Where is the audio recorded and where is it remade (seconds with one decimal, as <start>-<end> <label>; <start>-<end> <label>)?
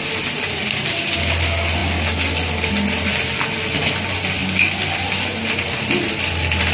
0.0-4.4 recorded; 4.4-6.3 remade; 6.3-6.7 recorded